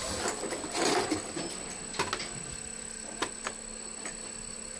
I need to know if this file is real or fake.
real